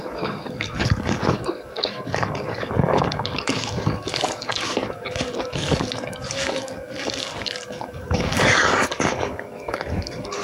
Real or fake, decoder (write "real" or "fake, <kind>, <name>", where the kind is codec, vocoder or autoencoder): fake, codec, DAC